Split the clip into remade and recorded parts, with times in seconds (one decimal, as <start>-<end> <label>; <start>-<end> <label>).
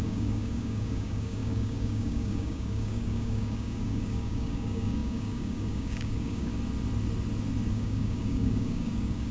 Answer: 0.0-6.5 remade; 6.5-7.7 recorded; 7.7-9.3 remade